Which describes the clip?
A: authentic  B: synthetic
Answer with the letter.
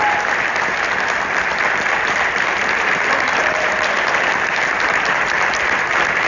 B